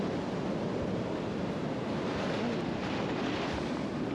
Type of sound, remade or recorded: recorded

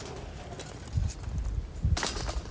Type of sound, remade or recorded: recorded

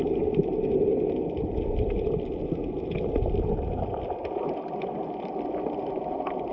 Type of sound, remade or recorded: recorded